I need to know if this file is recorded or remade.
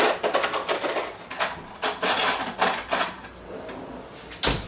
recorded